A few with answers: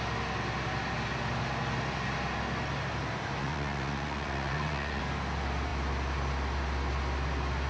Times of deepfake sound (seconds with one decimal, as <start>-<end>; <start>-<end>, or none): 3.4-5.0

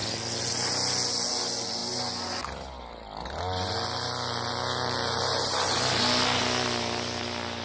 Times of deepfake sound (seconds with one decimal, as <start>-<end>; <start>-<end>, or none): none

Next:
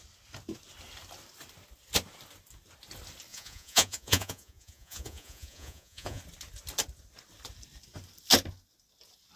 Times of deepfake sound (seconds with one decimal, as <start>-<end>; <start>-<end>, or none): 3.3-6.2